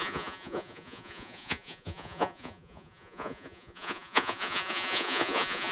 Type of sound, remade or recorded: remade